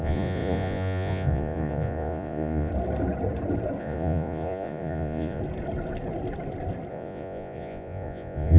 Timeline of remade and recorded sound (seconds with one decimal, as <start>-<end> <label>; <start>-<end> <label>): 0.0-2.7 remade; 2.7-3.8 recorded; 3.8-5.4 remade; 5.4-6.9 recorded; 6.9-8.6 remade